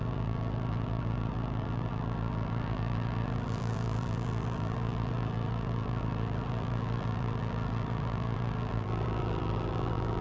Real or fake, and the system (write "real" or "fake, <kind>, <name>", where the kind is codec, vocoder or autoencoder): fake, vocoder, BigVGAN v2